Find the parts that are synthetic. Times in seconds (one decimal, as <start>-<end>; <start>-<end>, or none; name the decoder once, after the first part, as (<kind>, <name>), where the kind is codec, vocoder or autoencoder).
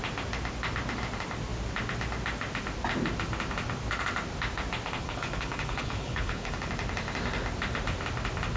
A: 5.0-6.7 (codec, HILCodec)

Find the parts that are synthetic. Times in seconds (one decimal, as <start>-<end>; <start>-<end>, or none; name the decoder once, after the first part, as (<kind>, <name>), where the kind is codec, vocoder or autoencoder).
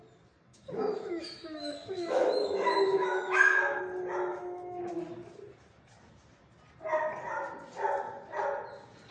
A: 0.5-3.8 (autoencoder, DAC-VAE); 4.3-4.8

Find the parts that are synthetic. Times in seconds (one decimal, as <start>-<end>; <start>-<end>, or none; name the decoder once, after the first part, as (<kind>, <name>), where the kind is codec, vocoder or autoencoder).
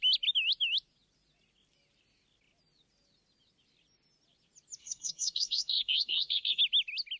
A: 4.8-6.6 (codec, SNAC)